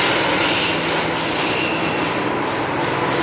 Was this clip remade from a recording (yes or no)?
no